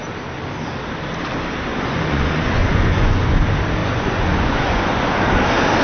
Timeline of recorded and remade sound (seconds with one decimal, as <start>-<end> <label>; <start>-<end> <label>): 0.0-1.7 recorded; 1.7-3.4 remade; 3.4-3.8 recorded; 3.8-5.1 remade; 5.1-5.8 recorded